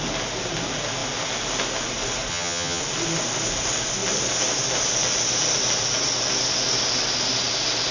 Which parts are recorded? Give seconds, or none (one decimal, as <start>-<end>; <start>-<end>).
0.0-2.3; 2.8-7.9